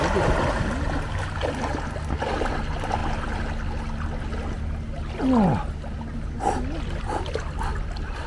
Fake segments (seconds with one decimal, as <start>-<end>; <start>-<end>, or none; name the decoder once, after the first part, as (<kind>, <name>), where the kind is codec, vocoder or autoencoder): none